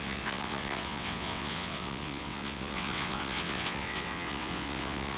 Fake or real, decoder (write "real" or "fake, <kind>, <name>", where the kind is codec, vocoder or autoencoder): fake, vocoder, WaveNeXt